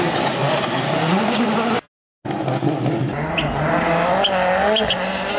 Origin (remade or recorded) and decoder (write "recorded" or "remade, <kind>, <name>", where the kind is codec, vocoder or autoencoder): recorded